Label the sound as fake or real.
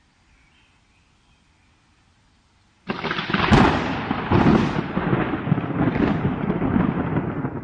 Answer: real